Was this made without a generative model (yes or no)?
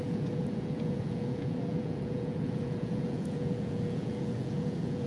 no